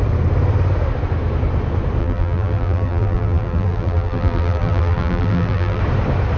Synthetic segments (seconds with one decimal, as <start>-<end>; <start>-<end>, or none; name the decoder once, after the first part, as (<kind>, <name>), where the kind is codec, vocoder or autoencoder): 2.0-5.8 (vocoder, BigVGAN v2)